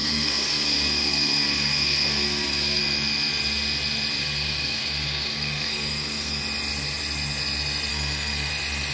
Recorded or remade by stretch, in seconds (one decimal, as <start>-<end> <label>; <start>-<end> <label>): 0.0-2.8 remade; 2.8-4.2 recorded; 4.2-6.4 remade; 6.4-7.9 recorded; 7.9-8.5 remade; 8.5-8.9 recorded